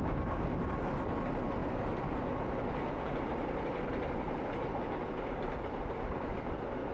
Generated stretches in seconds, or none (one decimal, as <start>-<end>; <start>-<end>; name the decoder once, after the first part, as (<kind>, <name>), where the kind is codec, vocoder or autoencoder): 0.0-0.6 (codec, DAC)